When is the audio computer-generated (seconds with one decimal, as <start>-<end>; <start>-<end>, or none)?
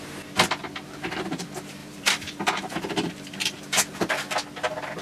1.8-4.1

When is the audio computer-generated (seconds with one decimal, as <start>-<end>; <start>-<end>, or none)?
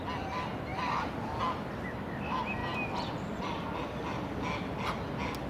0.7-1.4; 2.6-3.1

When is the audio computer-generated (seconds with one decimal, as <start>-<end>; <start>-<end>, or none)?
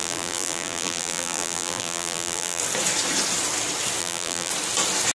0.0-2.6; 4.0-4.5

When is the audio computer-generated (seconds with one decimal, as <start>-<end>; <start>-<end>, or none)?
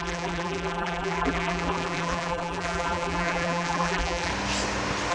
0.0-4.3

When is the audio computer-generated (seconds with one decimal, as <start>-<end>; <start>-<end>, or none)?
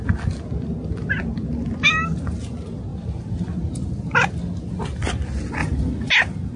5.6-6.1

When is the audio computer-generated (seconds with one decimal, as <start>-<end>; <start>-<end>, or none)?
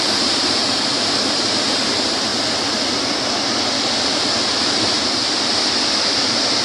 0.0-2.3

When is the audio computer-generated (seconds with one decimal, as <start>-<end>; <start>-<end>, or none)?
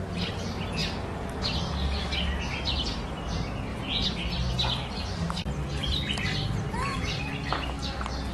6.9-7.7